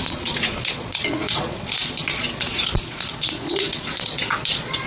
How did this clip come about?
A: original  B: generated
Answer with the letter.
B